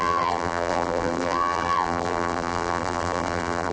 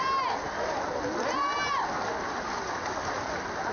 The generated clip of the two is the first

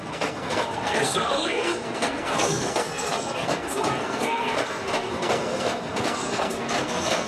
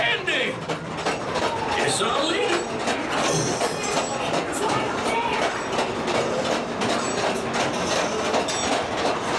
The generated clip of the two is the first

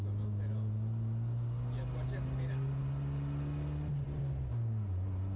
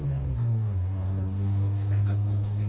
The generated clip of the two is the second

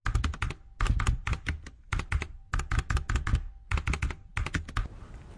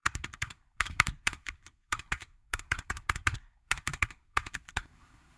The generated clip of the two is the second